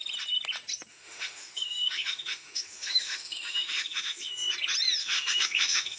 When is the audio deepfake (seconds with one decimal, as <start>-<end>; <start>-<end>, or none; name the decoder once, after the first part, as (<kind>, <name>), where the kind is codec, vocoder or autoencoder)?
0.9-4.5 (autoencoder, DAC-VAE); 5.0-6.0